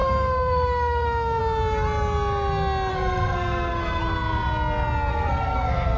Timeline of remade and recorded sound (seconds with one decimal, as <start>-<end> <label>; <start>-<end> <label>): 0.0-1.4 remade; 1.4-2.9 recorded; 2.9-4.0 remade; 4.0-5.1 recorded; 5.1-6.0 remade